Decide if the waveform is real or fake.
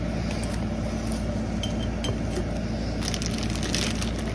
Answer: real